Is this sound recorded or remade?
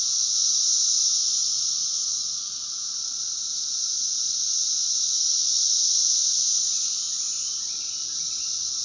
recorded